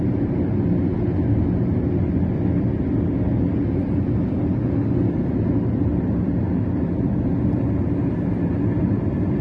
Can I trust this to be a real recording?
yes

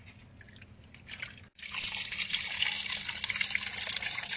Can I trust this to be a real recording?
yes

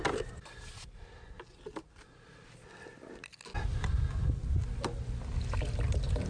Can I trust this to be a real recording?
yes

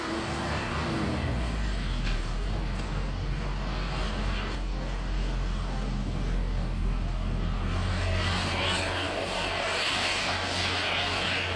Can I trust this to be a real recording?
no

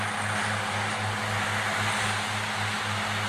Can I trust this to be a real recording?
yes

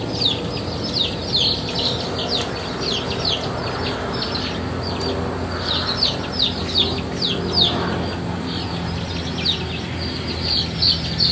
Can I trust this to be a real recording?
yes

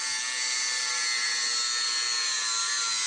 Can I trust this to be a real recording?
yes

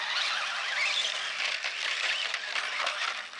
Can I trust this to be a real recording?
yes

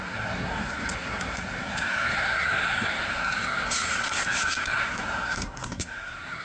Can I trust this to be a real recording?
no